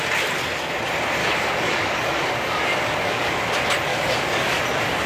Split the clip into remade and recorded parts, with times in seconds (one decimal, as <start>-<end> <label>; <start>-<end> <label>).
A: 0.0-1.2 recorded; 1.2-3.5 remade; 3.5-3.9 recorded; 3.9-4.6 remade; 4.6-5.1 recorded